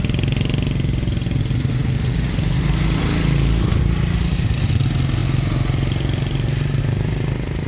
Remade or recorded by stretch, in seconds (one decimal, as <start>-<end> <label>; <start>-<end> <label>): 0.0-7.7 recorded